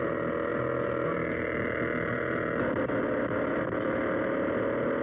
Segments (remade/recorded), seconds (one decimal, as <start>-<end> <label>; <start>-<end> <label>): 0.0-5.0 recorded